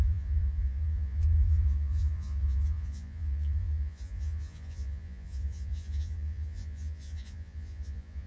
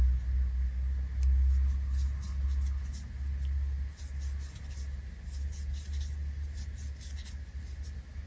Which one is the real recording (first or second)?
second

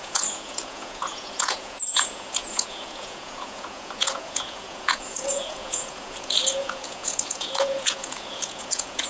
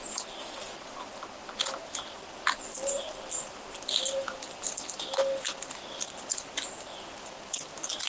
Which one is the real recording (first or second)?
second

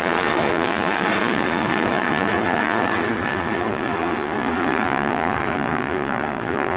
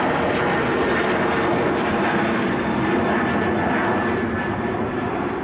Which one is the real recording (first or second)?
second